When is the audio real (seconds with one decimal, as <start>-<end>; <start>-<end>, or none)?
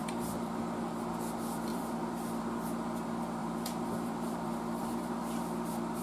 0.6-1.7; 2.4-3.4